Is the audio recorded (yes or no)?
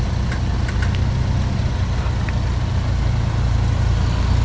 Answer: yes